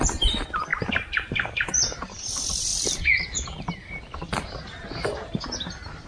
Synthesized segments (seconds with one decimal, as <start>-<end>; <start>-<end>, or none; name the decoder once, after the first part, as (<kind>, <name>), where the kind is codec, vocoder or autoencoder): 0.0-2.7 (vocoder, BigVGAN v2); 4.4-6.1